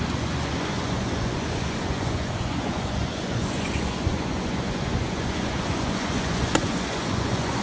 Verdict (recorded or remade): remade